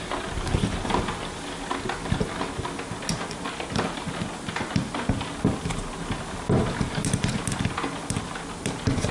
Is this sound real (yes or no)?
yes